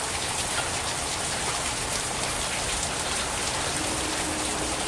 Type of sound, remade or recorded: recorded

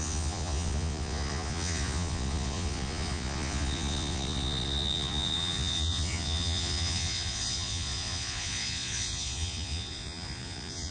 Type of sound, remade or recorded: remade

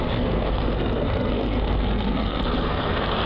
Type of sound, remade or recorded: remade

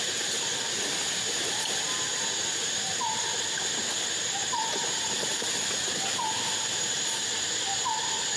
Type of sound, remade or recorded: recorded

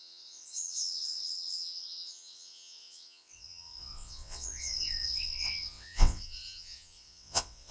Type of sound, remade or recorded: remade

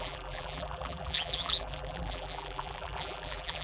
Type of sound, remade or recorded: remade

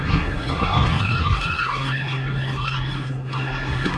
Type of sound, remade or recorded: remade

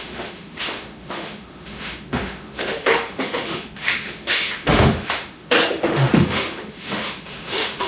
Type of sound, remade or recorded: remade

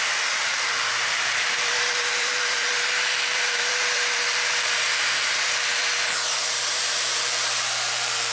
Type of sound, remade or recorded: remade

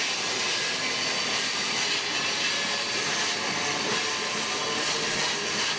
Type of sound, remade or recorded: recorded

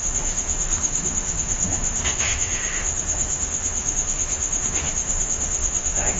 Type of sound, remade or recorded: remade